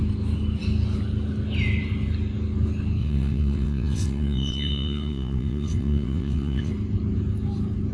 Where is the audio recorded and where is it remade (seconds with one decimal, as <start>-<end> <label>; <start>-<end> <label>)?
0.0-3.0 recorded; 3.0-6.7 remade; 6.7-7.9 recorded